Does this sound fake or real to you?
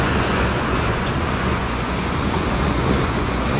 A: fake